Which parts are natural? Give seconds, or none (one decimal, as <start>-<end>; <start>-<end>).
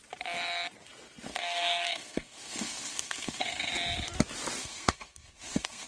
0.0-1.3; 3.7-4.6